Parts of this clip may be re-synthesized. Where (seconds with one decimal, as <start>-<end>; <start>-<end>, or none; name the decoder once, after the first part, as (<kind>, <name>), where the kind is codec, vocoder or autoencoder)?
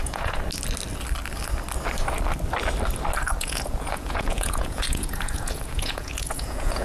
0.0-0.4 (vocoder, Vocos); 3.4-6.8